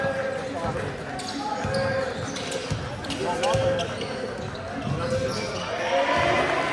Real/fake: real